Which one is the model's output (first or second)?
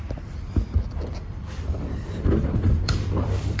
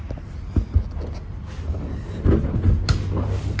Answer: first